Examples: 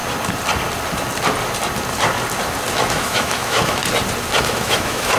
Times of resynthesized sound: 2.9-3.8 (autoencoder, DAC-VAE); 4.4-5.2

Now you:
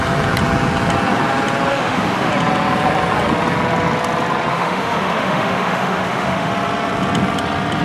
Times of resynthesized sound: 1.7-2.3 (autoencoder, DAC-VAE); 4.5-6.5

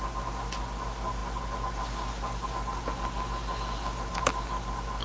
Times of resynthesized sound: none